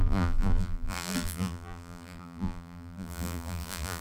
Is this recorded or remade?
remade